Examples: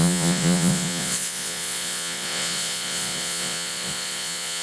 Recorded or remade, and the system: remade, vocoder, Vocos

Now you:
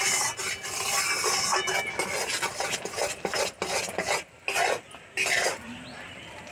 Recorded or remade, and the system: recorded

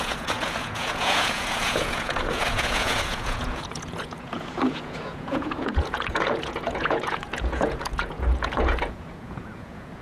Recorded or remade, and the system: remade, vocoder, Vocos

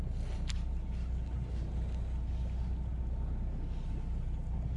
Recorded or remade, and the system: recorded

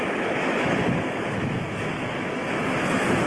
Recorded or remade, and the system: remade, autoencoder, DAC-VAE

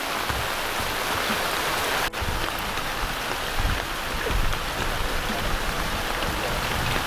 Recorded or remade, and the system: recorded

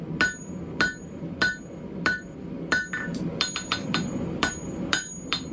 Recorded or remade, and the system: remade, vocoder, BigVGAN v2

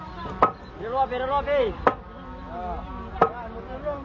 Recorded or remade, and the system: recorded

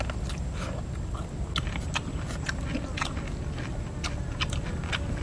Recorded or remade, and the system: recorded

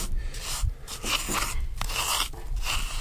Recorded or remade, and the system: recorded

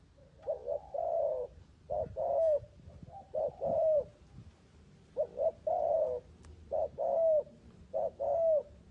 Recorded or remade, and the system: remade, vocoder, BigVGAN v2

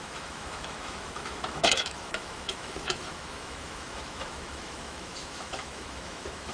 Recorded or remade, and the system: remade, autoencoder, DAC-VAE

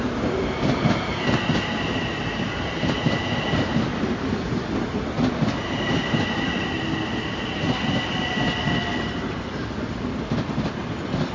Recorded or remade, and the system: recorded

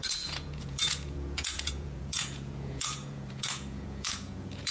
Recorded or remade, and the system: remade, vocoder, Vocos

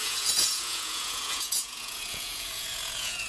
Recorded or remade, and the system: remade, vocoder, Vocos